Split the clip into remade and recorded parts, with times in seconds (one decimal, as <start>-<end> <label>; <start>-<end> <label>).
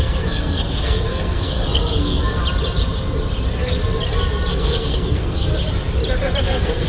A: 0.0-2.4 remade; 2.4-4.5 recorded; 4.5-5.5 remade; 5.5-6.4 recorded; 6.4-6.9 remade